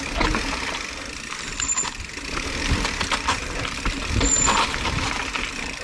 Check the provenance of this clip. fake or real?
fake